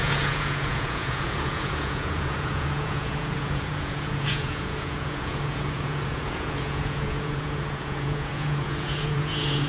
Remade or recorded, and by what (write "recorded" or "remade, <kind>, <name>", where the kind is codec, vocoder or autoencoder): remade, vocoder, Vocos